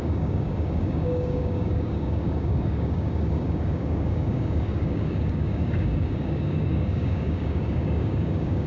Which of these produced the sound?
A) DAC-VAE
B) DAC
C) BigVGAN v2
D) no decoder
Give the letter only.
B